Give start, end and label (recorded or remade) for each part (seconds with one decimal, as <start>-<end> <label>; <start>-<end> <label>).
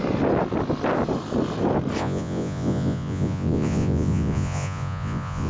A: 0.0-2.0 recorded; 2.0-5.5 remade